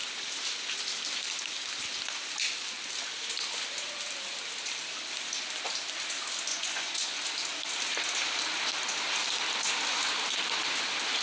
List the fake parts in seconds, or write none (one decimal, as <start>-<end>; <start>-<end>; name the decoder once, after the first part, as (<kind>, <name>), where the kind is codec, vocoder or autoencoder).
6.5-7.2 (vocoder, Vocos)